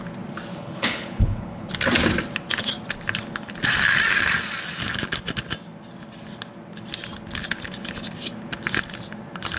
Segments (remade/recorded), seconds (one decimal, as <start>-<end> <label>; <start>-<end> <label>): 0.0-0.5 recorded; 0.5-1.7 remade; 1.7-9.6 recorded